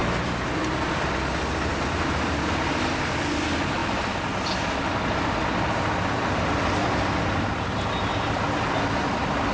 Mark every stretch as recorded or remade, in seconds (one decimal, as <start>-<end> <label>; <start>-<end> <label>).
0.0-9.5 recorded